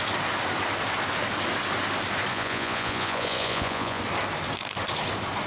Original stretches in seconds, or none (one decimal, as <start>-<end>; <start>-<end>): 0.0-2.3; 4.0-5.5